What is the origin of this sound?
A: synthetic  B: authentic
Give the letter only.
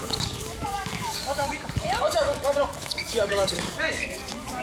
A